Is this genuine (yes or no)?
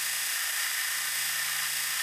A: yes